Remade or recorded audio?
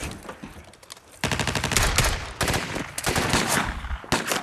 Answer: recorded